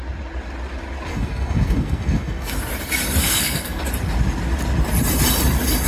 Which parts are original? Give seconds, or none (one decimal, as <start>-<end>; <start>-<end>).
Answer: 0.0-1.1; 2.5-3.2; 3.8-5.9